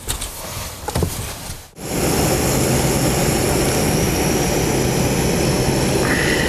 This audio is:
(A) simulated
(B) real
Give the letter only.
B